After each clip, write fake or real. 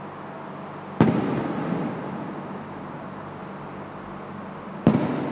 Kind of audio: real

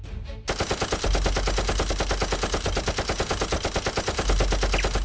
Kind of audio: real